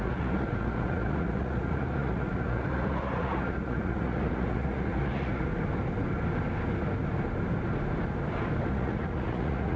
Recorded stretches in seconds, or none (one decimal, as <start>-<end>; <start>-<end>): 5.5-8.7